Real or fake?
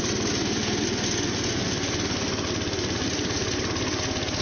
real